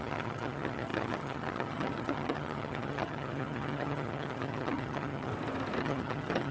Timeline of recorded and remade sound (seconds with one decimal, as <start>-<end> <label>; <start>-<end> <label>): 0.0-5.3 remade; 5.3-5.8 recorded; 5.8-6.5 remade